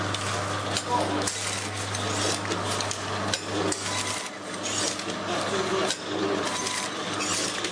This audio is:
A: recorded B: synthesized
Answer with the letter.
A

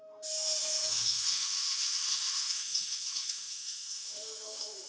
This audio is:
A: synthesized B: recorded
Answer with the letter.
A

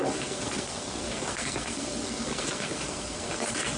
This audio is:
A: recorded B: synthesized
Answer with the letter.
B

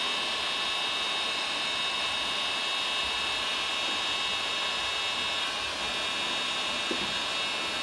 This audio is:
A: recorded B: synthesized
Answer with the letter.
A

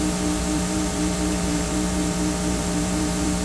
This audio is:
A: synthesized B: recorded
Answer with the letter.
A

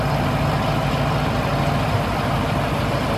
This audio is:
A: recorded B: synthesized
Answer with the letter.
A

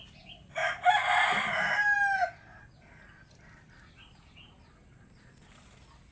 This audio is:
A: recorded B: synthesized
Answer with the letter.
A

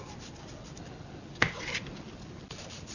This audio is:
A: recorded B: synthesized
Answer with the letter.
A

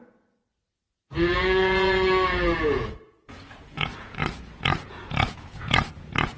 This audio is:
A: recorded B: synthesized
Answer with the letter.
B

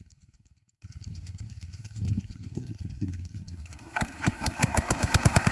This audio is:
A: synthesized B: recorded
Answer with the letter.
A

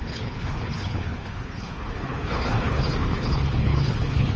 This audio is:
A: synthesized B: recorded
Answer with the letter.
A